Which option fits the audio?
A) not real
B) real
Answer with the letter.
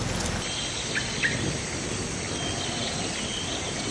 B